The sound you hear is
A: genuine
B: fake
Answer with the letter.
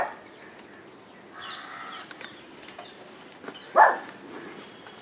A